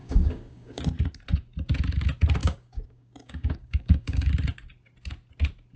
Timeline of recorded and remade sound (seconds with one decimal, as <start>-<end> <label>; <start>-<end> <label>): 0.0-0.8 remade; 0.8-2.4 recorded; 2.4-4.3 remade; 4.3-5.8 recorded